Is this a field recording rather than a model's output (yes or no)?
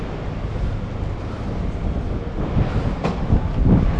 yes